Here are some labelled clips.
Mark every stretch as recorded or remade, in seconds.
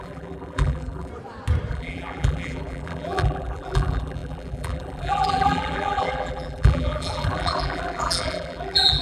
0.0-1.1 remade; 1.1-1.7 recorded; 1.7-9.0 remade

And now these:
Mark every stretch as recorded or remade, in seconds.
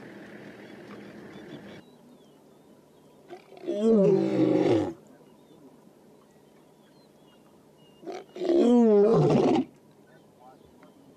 0.0-4.3 recorded; 4.3-5.2 remade; 5.2-9.1 recorded; 9.1-9.8 remade; 9.8-11.2 recorded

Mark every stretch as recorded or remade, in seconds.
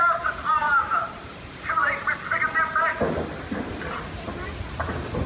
0.0-0.6 recorded; 0.6-1.6 remade; 1.6-5.3 recorded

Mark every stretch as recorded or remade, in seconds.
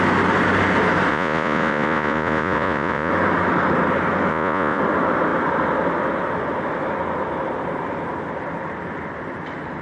0.0-1.1 recorded; 1.1-3.1 remade; 3.1-4.3 recorded; 4.3-4.8 remade; 4.8-9.8 recorded